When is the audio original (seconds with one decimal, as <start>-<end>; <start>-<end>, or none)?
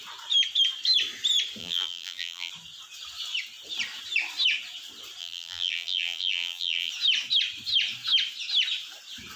0.0-1.6; 2.5-5.2; 6.9-9.4